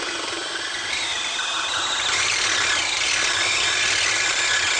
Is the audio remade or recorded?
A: recorded